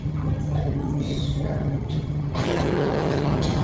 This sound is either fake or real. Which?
fake